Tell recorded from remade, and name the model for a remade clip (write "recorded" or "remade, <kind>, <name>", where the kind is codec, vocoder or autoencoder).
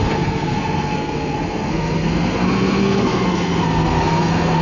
remade, codec, SNAC